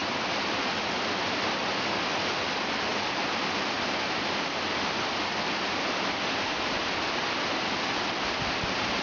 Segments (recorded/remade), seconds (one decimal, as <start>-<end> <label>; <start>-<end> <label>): 0.0-9.0 recorded